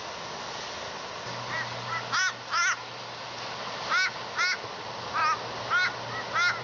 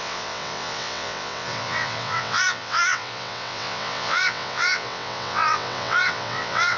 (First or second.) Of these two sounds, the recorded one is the first